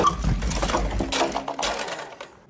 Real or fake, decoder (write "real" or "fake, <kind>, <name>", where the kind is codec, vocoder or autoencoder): real